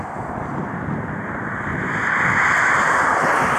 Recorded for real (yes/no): yes